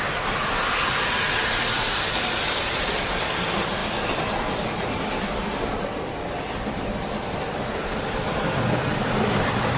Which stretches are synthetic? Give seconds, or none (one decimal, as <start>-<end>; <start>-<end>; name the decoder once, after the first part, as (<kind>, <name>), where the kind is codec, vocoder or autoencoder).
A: none